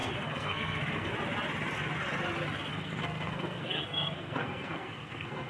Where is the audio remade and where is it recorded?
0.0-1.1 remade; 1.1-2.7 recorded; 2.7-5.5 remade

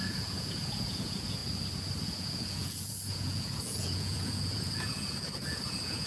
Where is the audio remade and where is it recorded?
0.0-1.4 remade; 1.4-2.0 recorded; 2.0-6.1 remade

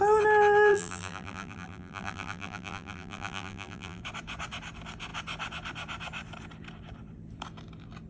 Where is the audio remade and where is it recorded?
0.0-0.7 recorded; 0.7-4.0 remade; 4.0-8.1 recorded

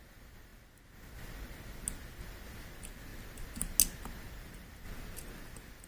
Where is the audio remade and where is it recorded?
0.0-5.9 recorded

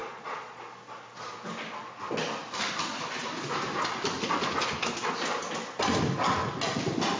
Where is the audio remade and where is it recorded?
0.0-0.6 remade; 0.6-7.2 recorded

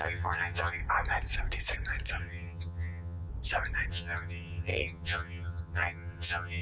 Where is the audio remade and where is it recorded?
0.0-0.8 remade; 0.8-2.2 recorded; 2.2-3.3 remade; 3.3-3.9 recorded; 3.9-6.6 remade

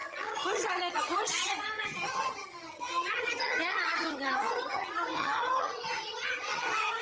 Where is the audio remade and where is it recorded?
0.0-7.0 remade

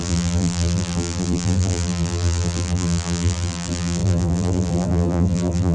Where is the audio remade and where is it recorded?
0.0-5.7 remade